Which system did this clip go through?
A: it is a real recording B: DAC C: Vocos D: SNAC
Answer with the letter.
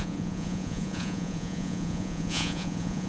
C